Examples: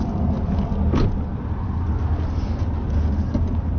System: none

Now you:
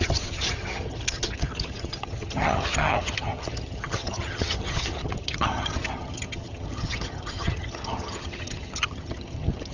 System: vocoder, HiFi-GAN